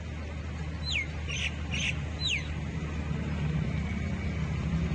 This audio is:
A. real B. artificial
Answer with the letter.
A